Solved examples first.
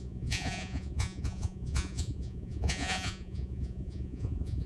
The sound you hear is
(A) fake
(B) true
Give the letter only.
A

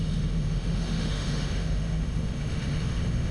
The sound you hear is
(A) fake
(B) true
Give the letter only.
A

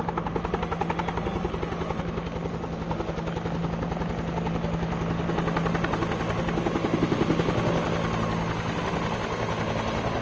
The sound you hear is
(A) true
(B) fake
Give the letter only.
A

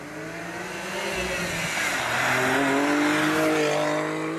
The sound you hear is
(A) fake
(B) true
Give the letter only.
B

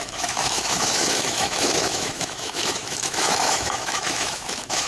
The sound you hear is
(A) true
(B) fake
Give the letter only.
B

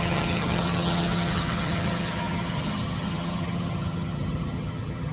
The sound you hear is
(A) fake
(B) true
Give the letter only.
A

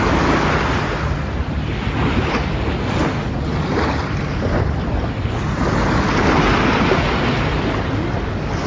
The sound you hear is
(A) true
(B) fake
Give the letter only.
A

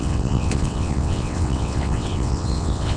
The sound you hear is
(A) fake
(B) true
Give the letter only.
A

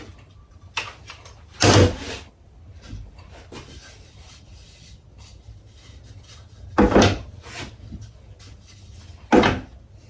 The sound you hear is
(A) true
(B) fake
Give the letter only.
A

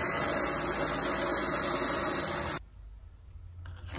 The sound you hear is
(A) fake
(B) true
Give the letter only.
B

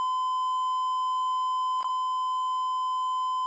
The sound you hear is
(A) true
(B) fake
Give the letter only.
B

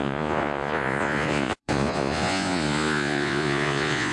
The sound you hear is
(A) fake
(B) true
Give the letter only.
A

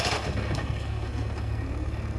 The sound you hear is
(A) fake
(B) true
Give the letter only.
A